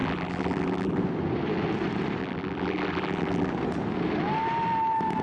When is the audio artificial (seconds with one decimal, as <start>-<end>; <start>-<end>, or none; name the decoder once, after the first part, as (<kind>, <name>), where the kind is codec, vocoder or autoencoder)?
0.0-1.0 (vocoder, BigVGAN v2); 2.2-3.5